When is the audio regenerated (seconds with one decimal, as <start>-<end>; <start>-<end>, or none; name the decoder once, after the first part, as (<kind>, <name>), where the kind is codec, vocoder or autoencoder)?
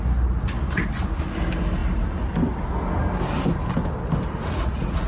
4.4-5.1 (vocoder, Vocos)